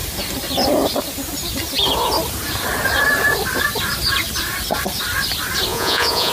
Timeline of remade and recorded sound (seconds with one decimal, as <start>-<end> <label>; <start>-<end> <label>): 0.0-5.7 recorded; 5.7-6.3 remade